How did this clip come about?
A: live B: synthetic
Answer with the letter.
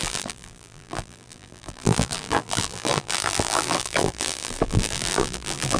B